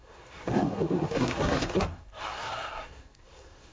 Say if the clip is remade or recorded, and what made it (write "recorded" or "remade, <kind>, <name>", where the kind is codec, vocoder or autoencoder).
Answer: remade, codec, SNAC